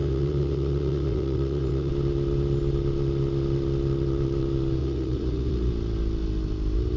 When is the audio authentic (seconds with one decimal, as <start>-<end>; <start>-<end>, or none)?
1.9-4.8; 5.7-7.0